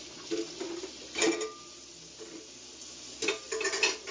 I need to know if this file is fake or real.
real